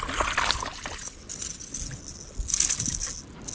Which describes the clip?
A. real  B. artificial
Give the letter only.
A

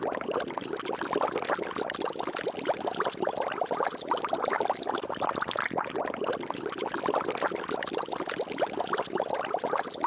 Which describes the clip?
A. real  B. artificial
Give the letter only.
A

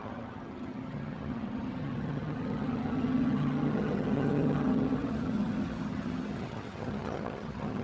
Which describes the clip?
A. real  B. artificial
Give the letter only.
B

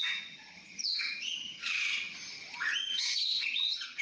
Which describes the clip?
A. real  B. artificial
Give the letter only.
B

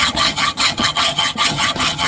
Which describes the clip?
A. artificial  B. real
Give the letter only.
A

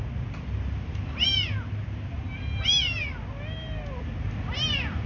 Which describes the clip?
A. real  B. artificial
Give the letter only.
A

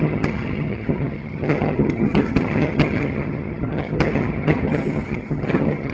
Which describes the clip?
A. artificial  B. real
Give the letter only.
A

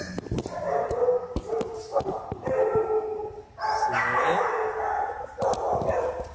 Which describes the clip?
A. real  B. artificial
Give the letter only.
A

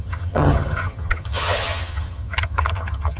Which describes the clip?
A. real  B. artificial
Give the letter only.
B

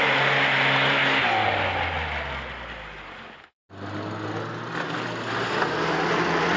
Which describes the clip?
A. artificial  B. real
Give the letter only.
B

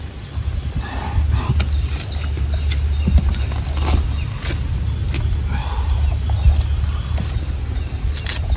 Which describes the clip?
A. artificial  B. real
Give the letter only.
B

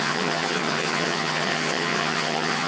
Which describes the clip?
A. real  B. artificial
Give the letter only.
B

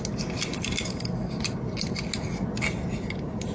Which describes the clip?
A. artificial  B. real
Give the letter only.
B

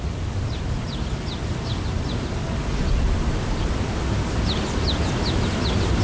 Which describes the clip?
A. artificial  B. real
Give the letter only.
B